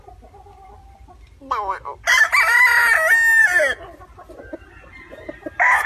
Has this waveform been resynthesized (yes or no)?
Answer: no